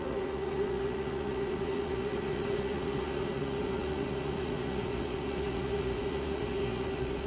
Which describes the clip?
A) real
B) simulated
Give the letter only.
B